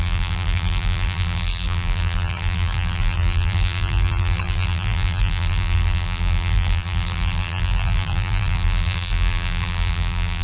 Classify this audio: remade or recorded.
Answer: remade